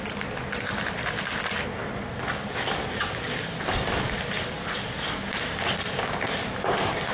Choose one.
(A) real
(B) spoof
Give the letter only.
A